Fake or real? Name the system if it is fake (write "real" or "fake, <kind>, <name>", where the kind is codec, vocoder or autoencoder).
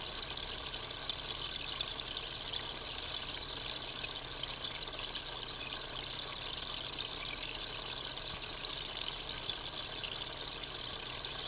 real